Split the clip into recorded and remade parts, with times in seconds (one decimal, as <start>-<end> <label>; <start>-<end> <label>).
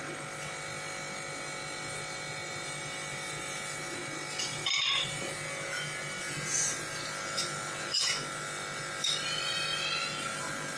0.0-10.8 recorded